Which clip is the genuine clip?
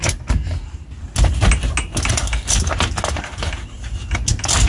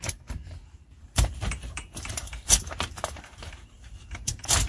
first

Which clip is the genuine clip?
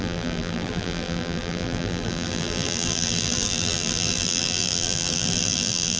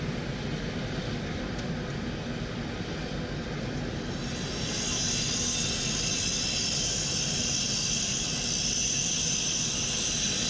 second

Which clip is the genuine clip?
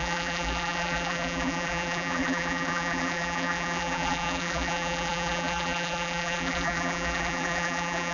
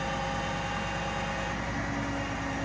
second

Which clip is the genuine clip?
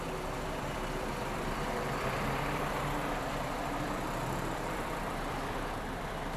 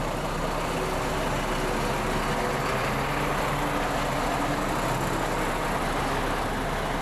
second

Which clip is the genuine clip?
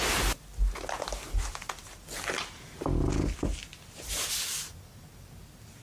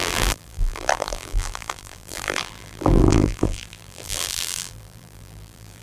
first